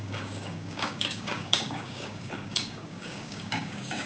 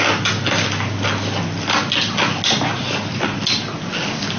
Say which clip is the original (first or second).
second